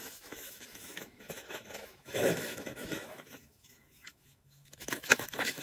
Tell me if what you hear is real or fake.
fake